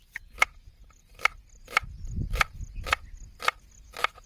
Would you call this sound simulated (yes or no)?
no